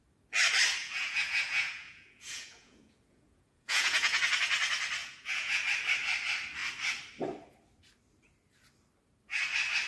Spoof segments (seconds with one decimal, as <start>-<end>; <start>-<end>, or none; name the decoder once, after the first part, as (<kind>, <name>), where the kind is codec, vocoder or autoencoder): 0.8-4.2 (vocoder, Vocos); 5.0-5.6